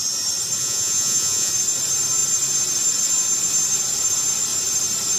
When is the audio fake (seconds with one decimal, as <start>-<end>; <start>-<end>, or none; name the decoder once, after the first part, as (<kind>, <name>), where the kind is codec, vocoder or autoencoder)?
0.6-1.5 (vocoder, Vocos)

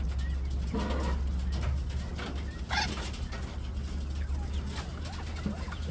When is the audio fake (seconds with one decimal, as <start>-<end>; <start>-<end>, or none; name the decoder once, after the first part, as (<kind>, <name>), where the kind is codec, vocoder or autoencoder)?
none

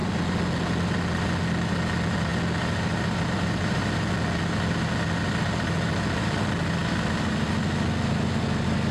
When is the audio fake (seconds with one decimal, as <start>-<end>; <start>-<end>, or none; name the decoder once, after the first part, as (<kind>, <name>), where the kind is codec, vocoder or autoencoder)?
none

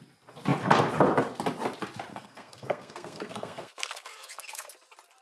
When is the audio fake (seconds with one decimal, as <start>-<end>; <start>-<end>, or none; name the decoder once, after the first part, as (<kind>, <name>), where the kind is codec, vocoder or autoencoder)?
2.1-4.7 (codec, SNAC)

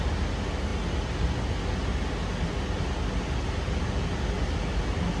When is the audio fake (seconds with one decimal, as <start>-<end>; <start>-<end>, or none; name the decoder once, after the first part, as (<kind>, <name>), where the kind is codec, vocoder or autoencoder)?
none

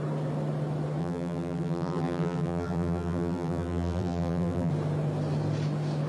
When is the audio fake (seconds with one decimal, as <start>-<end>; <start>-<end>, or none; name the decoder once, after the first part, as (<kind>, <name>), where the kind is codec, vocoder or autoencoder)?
1.0-4.7 (vocoder, BigVGAN v2)